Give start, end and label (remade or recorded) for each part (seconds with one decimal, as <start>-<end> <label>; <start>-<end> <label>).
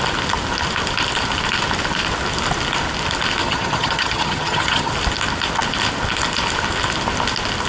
0.0-3.4 recorded; 3.4-4.9 remade; 4.9-7.7 recorded